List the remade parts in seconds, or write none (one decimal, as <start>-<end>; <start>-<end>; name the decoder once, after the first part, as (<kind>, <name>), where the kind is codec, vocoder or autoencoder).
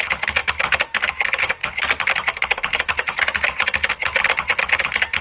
none